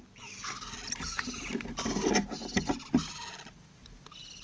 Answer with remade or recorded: recorded